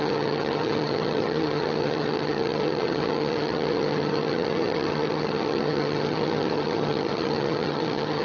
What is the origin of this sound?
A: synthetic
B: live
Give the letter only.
A